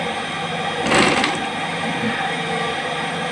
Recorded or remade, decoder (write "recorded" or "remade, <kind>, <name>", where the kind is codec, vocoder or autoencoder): recorded